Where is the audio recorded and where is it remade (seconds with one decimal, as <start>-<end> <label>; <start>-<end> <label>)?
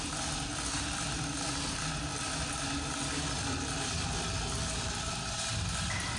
0.0-6.2 recorded